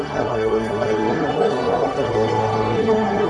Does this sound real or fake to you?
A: fake